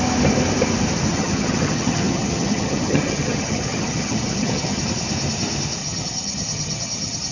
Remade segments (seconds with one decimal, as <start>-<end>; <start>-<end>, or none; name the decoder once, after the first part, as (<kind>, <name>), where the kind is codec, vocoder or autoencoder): 1.1-4.8 (vocoder, HiFi-GAN); 5.8-7.3